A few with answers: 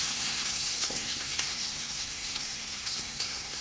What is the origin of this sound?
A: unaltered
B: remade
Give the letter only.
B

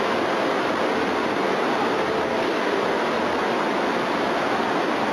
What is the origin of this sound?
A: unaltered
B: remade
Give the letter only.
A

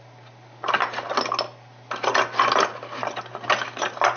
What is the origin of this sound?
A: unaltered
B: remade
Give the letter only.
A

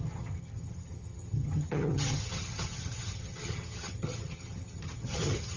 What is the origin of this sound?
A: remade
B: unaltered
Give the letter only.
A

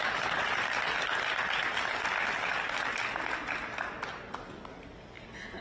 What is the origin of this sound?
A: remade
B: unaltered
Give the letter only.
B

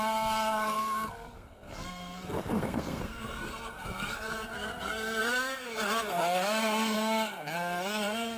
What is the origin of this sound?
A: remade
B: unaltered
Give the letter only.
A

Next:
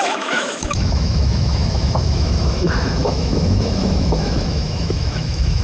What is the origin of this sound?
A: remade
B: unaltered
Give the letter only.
A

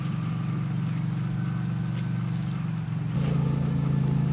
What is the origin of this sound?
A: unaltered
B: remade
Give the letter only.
A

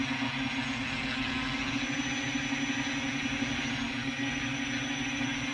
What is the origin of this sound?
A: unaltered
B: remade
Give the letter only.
A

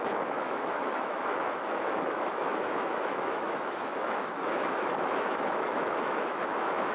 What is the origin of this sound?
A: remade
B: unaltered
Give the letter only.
A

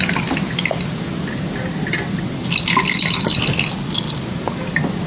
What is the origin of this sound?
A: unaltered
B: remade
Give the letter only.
A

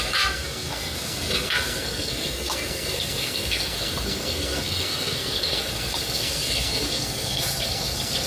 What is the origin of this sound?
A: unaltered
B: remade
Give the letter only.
B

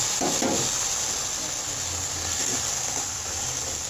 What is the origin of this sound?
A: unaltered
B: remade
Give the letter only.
A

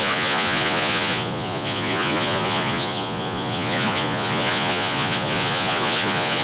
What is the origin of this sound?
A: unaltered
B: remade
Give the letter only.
B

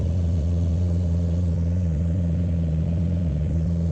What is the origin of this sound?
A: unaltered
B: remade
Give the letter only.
B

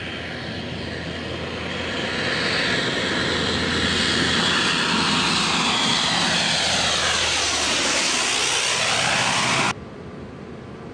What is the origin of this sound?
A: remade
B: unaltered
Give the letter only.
B